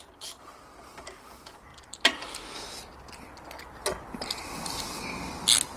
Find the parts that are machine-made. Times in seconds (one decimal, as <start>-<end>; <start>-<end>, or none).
none